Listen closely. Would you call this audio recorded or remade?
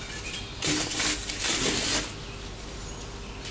recorded